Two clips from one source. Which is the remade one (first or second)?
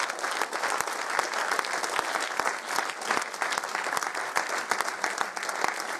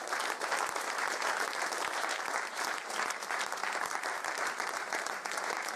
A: second